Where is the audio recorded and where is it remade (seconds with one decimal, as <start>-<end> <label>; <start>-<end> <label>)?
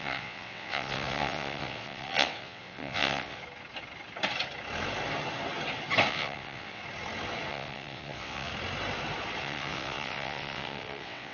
0.0-3.4 remade; 3.4-6.1 recorded; 6.1-6.8 remade; 6.8-7.5 recorded; 7.5-8.5 remade; 8.5-9.4 recorded; 9.4-11.3 remade